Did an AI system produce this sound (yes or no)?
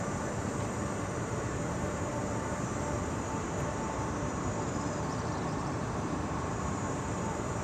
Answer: yes